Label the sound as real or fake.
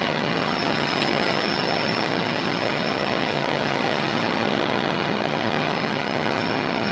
fake